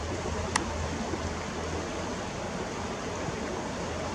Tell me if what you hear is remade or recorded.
recorded